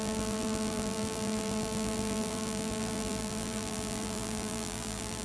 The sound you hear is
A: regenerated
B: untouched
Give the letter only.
A